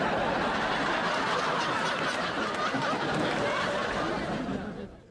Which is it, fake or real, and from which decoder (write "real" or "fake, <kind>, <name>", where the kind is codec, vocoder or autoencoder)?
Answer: real